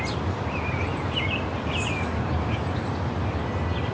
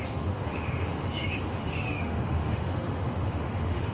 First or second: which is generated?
second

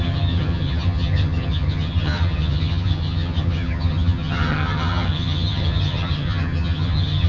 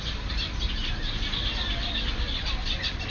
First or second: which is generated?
first